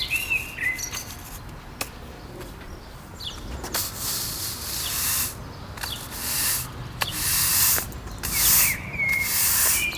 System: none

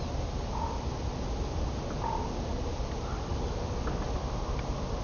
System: none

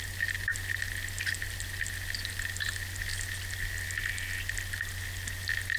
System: none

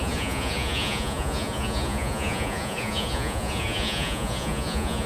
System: vocoder, Vocos